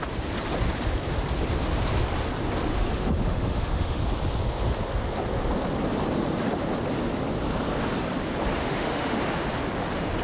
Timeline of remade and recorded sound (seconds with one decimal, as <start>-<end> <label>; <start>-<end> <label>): 0.0-2.7 recorded; 2.7-4.0 remade; 4.0-8.6 recorded; 8.6-9.2 remade; 9.2-10.2 recorded